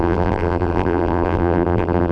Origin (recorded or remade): remade